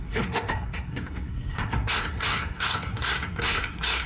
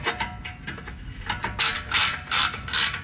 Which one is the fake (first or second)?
first